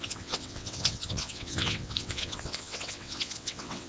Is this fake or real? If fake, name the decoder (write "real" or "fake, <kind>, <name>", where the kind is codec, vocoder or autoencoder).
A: fake, vocoder, WaveNeXt